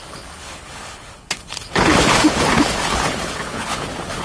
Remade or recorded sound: remade